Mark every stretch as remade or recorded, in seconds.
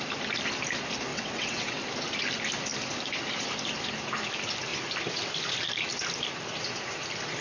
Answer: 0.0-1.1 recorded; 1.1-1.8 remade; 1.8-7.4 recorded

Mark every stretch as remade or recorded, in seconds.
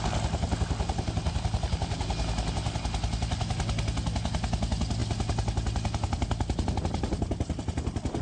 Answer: 0.0-8.2 recorded